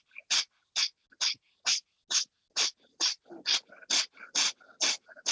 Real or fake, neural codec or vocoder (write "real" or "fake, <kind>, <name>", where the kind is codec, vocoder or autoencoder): real